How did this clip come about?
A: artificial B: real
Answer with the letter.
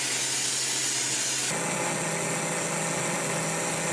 B